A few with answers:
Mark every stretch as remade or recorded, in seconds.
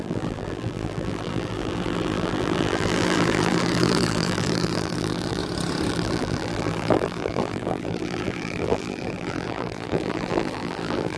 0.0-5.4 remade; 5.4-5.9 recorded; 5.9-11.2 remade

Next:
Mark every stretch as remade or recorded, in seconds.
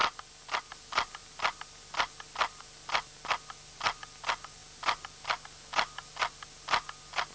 0.0-7.3 recorded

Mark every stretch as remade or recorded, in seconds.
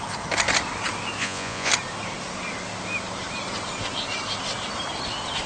0.0-1.2 recorded; 1.2-1.7 remade; 1.7-5.5 recorded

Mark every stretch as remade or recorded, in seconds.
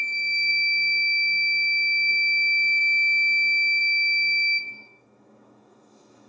0.0-2.8 remade; 2.8-3.8 recorded; 3.8-6.3 remade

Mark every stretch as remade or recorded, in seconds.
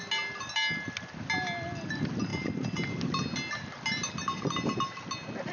0.0-5.5 recorded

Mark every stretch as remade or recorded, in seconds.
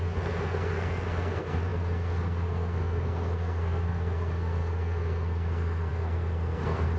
0.0-7.0 remade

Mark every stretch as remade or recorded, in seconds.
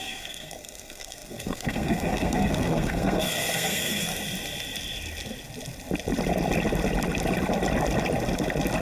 0.0-4.1 remade; 4.1-8.8 recorded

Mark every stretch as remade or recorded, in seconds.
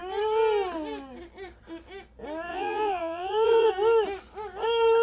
0.0-2.5 recorded; 2.5-3.7 remade; 3.7-5.0 recorded